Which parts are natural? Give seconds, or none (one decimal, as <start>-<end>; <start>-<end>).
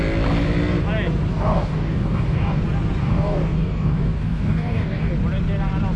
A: 0.0-1.3; 2.6-3.0; 5.1-6.0